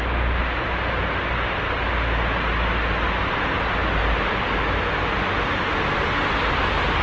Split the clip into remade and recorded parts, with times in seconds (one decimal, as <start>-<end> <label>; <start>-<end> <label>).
0.0-7.0 recorded